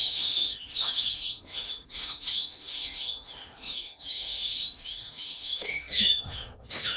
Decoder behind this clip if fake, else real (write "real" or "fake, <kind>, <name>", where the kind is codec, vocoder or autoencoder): fake, autoencoder, DAC-VAE